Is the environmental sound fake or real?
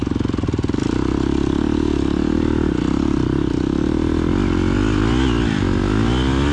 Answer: real